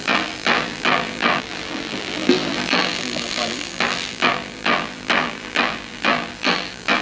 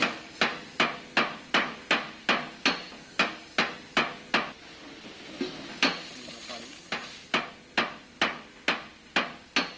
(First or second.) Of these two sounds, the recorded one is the second